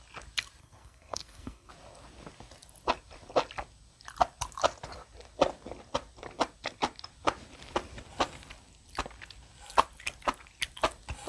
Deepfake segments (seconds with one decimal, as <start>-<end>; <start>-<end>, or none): 0.6-1.7